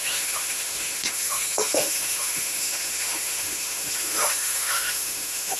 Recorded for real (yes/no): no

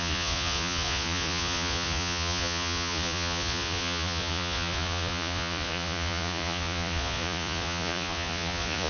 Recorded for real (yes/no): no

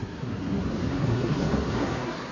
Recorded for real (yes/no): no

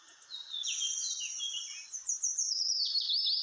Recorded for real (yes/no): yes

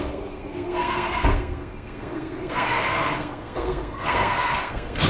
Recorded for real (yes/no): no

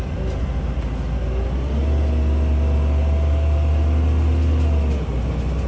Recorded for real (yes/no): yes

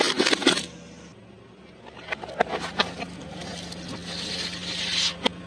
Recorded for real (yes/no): yes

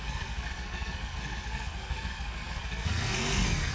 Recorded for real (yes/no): no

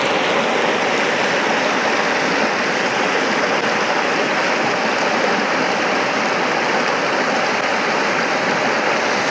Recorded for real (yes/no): yes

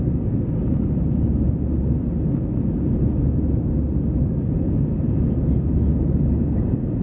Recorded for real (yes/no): yes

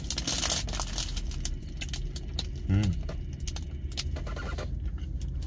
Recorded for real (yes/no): yes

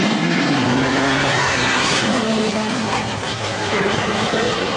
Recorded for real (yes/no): no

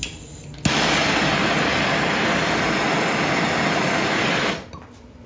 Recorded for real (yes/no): yes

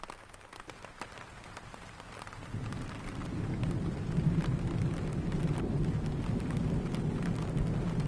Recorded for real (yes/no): yes